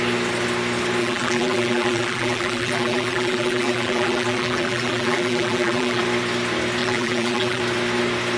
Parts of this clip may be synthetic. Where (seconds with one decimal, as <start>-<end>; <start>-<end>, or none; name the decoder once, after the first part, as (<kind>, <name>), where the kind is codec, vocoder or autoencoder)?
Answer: 1.0-6.0 (vocoder, BigVGAN v2); 6.8-7.6